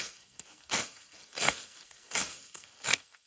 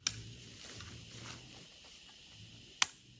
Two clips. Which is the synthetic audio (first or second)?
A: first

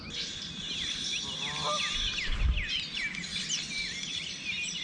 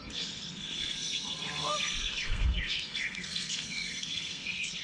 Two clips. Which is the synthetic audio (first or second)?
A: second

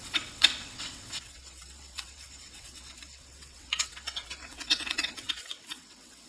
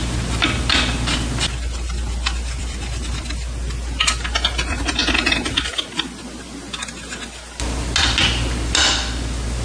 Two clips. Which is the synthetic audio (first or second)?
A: first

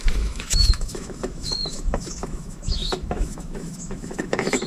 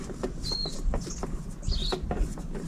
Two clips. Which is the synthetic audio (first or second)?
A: first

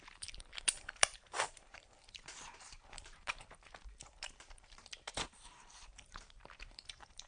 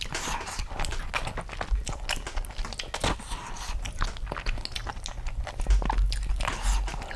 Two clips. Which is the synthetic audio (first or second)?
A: first